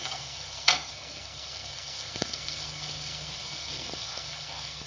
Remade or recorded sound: remade